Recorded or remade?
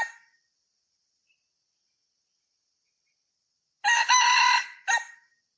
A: recorded